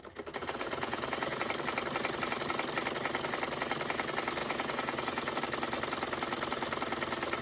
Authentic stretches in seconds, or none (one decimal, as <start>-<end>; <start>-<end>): 0.0-0.4; 1.5-4.4; 5.4-7.4